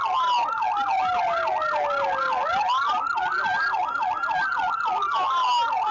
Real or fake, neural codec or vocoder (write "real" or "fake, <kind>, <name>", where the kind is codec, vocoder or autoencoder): real